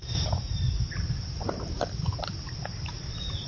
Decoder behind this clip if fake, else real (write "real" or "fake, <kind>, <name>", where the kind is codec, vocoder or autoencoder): real